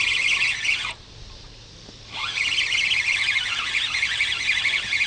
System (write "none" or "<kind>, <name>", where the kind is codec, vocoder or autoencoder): none